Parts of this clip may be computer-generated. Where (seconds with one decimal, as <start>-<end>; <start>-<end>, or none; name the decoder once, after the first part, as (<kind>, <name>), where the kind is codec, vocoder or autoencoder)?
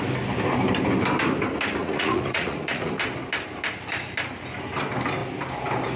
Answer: 1.8-2.9 (vocoder, Vocos)